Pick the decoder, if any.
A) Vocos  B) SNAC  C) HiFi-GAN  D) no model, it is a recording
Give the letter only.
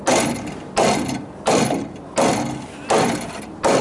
D